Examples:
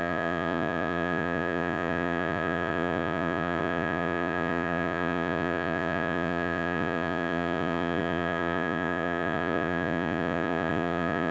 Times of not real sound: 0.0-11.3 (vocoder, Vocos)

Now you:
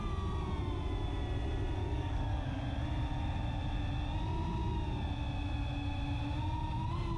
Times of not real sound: 1.8-2.6 (codec, DAC)

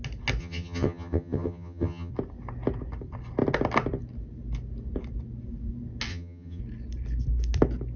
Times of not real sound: 0.4-2.1 (vocoder, HiFi-GAN); 6.1-6.6

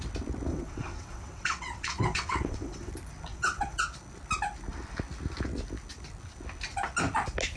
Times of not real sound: 0.5-2.9 (vocoder, WaveNeXt); 3.3-3.8

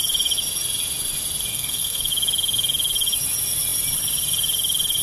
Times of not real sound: 1.5-2.1 (codec, SNAC)

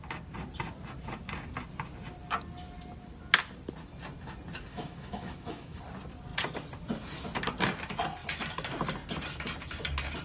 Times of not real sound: 4.7-5.8 (autoencoder, DAC-VAE)